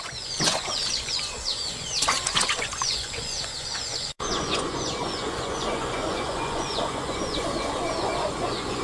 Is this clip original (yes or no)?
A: no